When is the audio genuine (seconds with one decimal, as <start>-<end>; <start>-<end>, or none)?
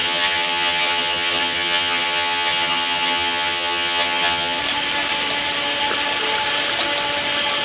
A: 4.6-7.6